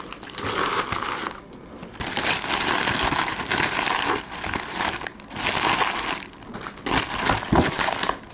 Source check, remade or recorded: recorded